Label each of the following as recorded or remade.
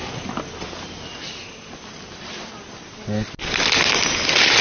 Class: recorded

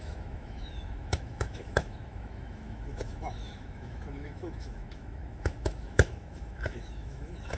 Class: remade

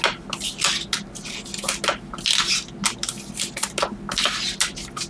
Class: recorded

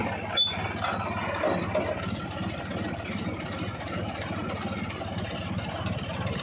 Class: recorded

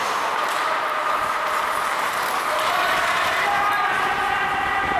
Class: recorded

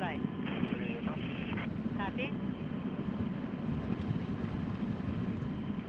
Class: recorded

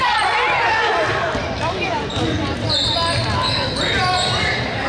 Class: recorded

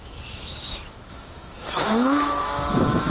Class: remade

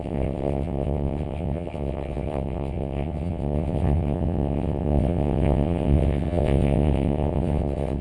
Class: remade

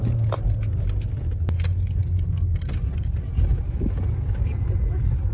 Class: recorded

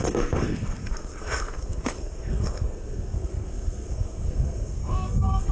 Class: remade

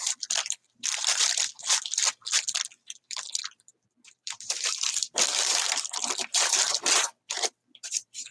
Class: remade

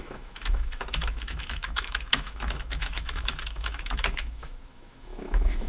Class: remade